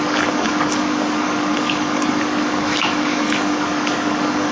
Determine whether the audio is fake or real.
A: fake